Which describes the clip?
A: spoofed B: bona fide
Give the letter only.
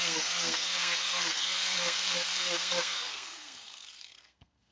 A